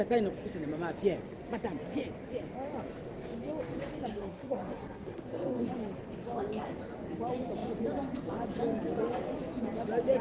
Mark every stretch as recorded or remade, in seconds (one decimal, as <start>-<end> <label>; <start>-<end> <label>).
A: 0.0-4.1 recorded; 4.1-5.7 remade; 5.7-10.2 recorded